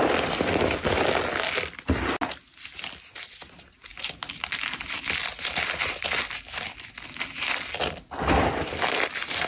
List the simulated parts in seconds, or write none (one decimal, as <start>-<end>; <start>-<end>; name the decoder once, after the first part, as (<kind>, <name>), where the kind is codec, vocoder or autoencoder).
none